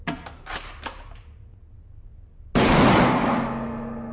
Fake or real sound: real